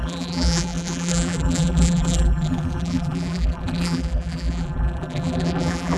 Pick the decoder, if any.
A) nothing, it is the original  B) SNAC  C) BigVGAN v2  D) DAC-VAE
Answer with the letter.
C